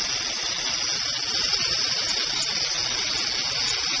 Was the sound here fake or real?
real